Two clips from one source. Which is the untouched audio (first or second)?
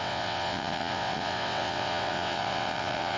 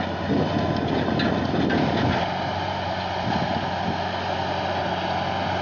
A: second